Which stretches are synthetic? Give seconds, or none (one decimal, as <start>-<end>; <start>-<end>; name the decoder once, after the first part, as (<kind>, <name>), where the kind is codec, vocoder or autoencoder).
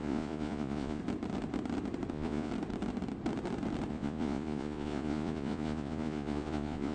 0.0-1.0 (vocoder, Vocos); 2.1-2.5; 3.9-6.9